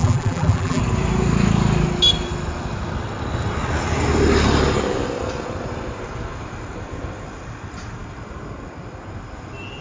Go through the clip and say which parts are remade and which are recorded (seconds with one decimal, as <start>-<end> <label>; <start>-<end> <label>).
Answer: 0.0-0.8 remade; 0.8-9.8 recorded